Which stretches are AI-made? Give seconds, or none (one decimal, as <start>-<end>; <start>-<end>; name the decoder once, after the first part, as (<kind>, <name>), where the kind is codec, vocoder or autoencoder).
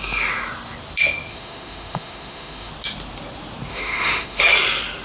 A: 1.3-2.7 (autoencoder, DAC-VAE); 3.7-4.4